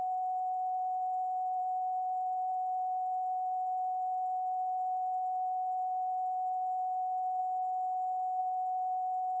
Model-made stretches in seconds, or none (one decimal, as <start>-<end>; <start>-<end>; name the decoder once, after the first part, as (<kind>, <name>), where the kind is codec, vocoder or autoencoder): 0.0-7.4 (autoencoder, DAC-VAE); 8.4-9.4